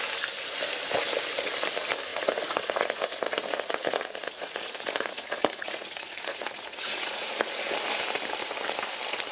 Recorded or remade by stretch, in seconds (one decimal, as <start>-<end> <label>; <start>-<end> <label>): 0.0-2.1 recorded; 2.1-7.3 remade; 7.3-9.3 recorded